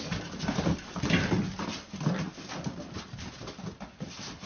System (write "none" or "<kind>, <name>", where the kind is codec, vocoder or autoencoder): none